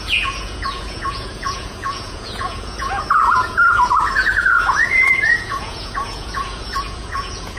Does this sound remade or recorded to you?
remade